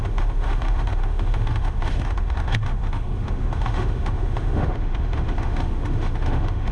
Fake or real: fake